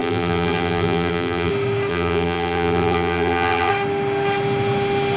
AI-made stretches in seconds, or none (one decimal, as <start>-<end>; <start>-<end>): 0.0-1.5; 1.9-3.7